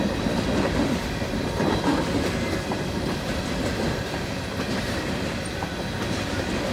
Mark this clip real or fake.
fake